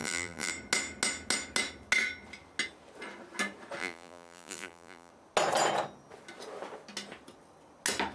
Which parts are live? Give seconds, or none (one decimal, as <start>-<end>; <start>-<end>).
0.5-3.8; 5.1-8.1